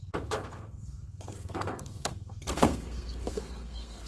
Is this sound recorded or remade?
remade